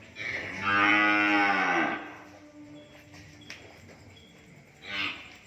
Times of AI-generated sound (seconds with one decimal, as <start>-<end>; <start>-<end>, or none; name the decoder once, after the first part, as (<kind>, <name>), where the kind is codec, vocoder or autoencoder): none